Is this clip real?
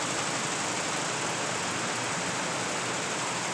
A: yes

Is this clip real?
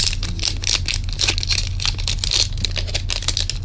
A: yes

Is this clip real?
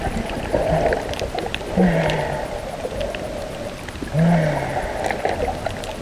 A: yes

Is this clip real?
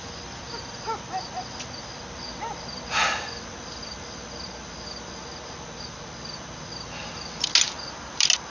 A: yes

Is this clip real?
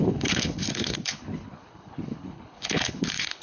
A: no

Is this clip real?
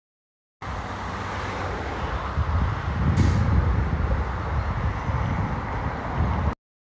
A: yes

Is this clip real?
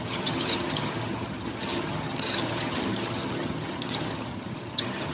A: no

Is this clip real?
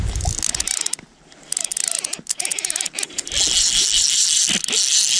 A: yes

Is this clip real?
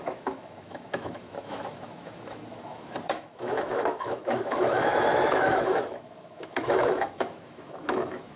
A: no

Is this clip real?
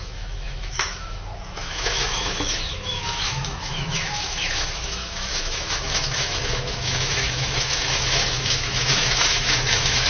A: no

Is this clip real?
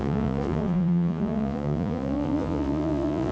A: no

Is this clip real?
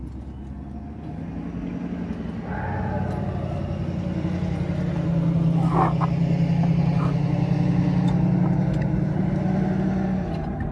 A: yes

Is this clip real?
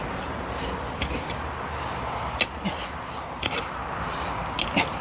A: yes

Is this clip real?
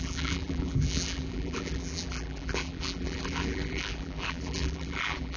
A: no